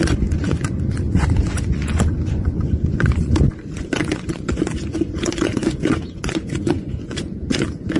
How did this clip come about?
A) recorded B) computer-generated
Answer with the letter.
B